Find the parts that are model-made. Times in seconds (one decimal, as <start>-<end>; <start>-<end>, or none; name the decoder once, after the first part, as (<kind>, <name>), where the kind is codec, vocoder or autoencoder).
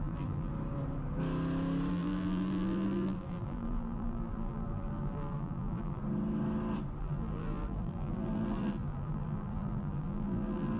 0.0-0.5 (vocoder, BigVGAN v2); 1.9-6.0; 7.0-10.8